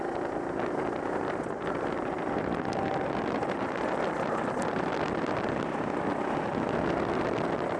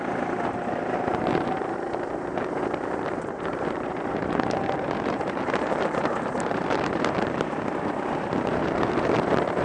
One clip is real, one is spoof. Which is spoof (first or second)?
second